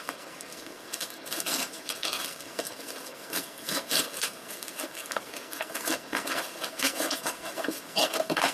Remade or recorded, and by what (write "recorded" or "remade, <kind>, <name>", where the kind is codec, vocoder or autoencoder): remade, codec, SNAC